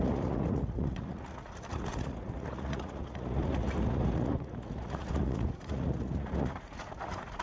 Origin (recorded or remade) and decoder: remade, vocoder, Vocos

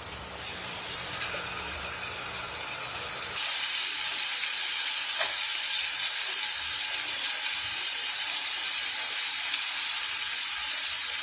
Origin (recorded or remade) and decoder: remade, vocoder, BigVGAN v2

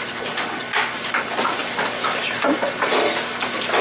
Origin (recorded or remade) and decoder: recorded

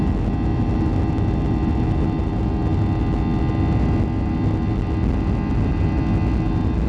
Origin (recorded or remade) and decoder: recorded